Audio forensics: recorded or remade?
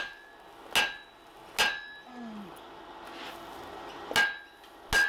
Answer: recorded